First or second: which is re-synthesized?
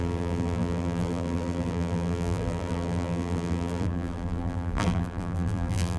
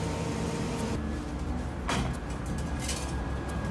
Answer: first